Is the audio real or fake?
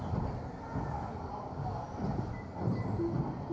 real